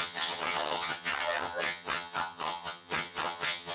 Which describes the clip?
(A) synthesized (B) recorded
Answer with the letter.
A